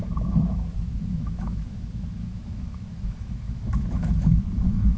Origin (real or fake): fake